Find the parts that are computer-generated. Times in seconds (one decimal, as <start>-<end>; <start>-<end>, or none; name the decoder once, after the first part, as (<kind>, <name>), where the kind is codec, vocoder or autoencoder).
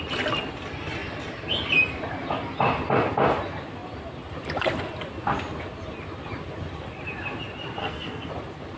7.8-8.3 (codec, SNAC)